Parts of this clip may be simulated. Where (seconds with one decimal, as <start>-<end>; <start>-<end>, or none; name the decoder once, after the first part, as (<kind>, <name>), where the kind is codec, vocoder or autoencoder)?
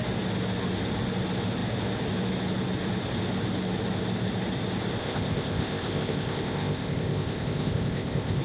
5.0-8.4 (codec, ZipCodec)